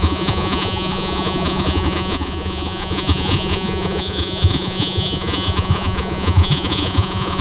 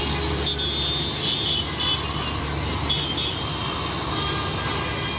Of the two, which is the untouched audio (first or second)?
second